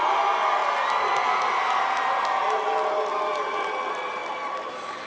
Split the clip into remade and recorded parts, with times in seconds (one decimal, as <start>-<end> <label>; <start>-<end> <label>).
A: 0.0-5.1 recorded